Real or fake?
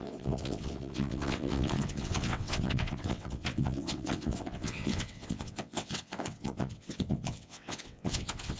fake